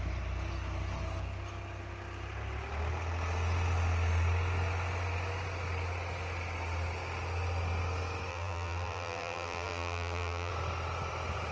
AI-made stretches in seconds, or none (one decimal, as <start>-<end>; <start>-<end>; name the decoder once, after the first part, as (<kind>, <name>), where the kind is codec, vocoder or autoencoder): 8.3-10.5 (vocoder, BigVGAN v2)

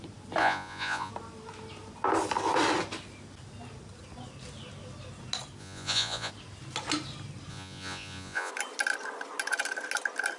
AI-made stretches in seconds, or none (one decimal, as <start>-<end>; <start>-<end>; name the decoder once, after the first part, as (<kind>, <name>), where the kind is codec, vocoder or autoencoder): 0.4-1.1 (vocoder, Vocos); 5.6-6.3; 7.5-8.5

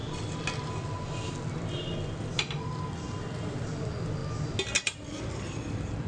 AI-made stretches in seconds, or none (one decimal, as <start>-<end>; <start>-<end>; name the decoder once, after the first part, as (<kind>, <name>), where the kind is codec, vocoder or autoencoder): none

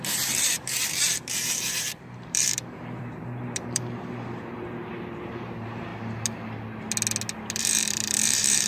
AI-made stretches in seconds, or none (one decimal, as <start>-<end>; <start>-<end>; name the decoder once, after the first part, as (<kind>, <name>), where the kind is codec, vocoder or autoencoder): 0.0-5.9 (vocoder, BigVGAN v2); 7.6-8.7